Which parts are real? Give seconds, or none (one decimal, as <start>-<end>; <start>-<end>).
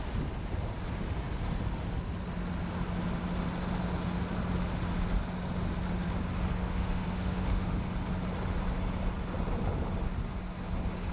0.0-6.6; 7.9-11.1